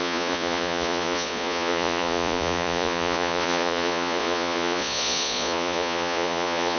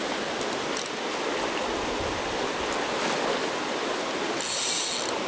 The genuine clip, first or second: second